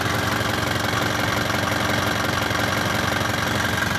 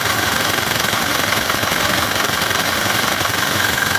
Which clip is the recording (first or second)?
first